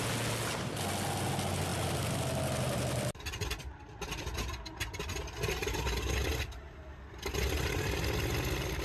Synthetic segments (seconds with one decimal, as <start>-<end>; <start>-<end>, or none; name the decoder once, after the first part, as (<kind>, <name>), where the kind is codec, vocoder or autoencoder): 1.7-4.2 (vocoder, BigVGAN v2)